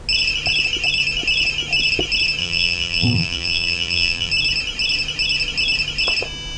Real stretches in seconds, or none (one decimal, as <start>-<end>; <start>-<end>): 0.0-2.4; 4.3-6.6